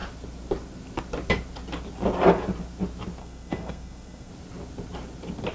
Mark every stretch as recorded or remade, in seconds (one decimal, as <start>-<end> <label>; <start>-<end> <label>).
0.0-3.2 recorded; 3.2-4.3 remade; 4.3-5.5 recorded